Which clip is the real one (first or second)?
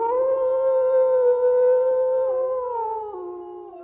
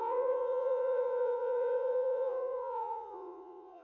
first